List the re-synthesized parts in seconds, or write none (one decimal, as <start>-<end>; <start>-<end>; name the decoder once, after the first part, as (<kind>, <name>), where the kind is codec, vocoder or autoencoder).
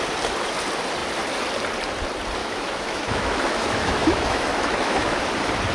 2.4-5.2 (autoencoder, DAC-VAE)